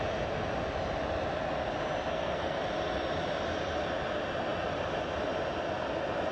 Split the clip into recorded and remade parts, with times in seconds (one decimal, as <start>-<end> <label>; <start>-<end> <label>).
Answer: 0.0-2.1 recorded; 2.1-2.6 remade; 2.6-6.3 recorded